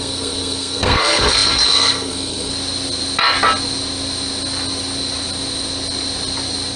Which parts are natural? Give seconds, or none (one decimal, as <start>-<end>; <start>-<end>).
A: 2.5-6.8